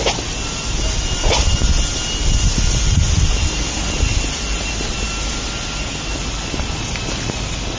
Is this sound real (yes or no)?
yes